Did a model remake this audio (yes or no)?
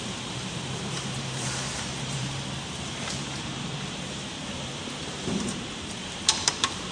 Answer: yes